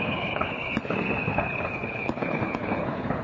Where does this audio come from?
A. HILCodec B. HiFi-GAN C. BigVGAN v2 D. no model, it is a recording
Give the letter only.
A